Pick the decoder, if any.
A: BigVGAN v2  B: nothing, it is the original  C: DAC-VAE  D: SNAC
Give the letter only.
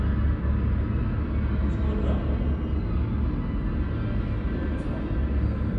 B